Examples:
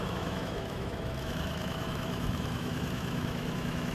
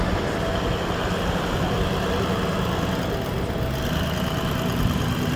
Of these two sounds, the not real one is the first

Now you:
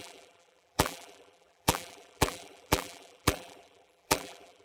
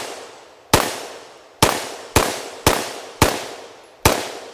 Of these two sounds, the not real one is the first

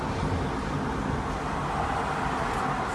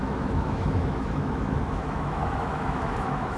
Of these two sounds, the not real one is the second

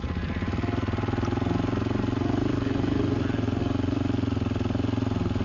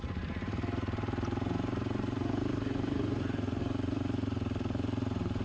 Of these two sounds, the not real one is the second